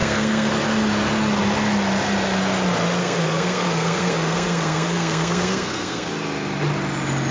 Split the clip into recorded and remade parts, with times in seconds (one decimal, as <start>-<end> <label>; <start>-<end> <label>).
0.0-0.5 remade; 0.5-3.0 recorded; 3.0-6.1 remade; 6.1-7.3 recorded